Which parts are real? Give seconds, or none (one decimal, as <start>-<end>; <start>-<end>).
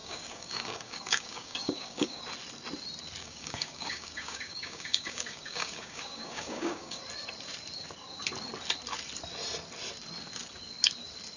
2.2-3.2; 7.0-11.4